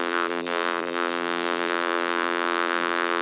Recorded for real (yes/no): no